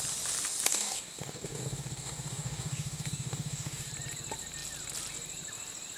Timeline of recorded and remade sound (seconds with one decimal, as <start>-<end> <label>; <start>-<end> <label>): 0.0-0.7 recorded; 0.7-3.9 remade; 3.9-6.0 recorded